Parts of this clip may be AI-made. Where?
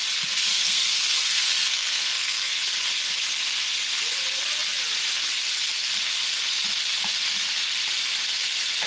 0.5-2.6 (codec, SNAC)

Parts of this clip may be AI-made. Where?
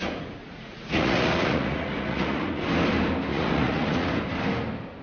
0.4-2.6 (vocoder, Vocos); 3.3-4.1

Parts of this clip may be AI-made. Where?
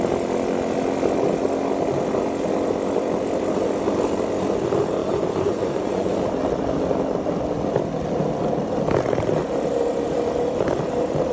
5.0-6.1 (vocoder, Vocos)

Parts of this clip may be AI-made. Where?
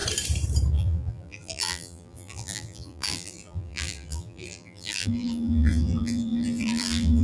0.7-7.2 (vocoder, BigVGAN v2)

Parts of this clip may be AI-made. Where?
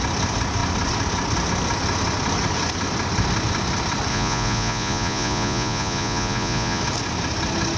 4.1-6.8 (vocoder, Vocos)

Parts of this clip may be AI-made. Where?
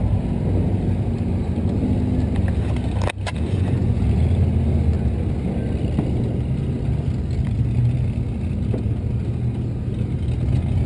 3.3-4.0 (vocoder, Vocos)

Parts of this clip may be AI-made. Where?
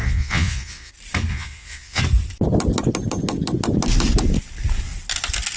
0.0-0.9 (vocoder, Vocos); 1.3-2.0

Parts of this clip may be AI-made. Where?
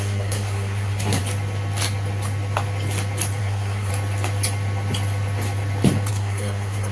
0.0-1.2 (codec, SNAC); 3.4-3.9; 6.1-6.9